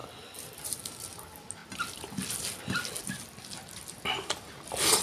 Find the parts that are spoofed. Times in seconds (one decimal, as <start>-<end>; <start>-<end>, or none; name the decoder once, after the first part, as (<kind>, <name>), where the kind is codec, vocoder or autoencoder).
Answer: 0.0-0.8 (vocoder, BigVGAN v2)